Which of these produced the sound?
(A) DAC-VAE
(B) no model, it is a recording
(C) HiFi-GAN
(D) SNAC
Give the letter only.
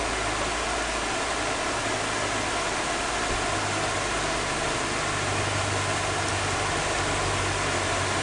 B